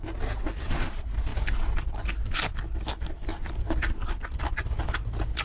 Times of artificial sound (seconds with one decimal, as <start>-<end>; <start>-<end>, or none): none